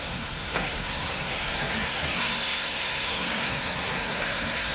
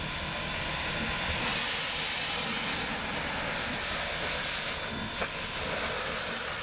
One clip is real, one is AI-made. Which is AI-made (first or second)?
first